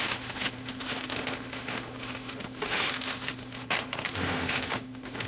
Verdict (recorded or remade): remade